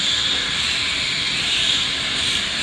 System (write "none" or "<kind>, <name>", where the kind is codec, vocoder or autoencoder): vocoder, BigVGAN v2